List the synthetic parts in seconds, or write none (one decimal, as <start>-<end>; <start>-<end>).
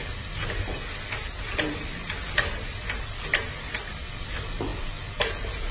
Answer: none